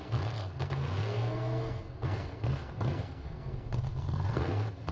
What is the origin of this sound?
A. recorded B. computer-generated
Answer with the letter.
B